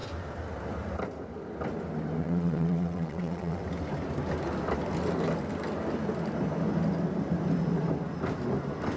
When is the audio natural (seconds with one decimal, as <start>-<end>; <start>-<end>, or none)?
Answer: 0.0-2.2; 3.6-9.0